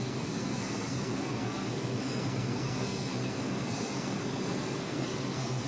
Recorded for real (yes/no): no